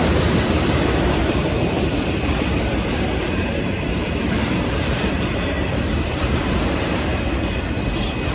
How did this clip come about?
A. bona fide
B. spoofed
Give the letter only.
B